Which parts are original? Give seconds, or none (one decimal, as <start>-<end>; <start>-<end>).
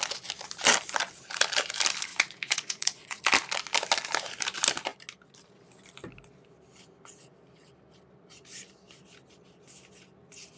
0.0-2.1; 3.2-10.6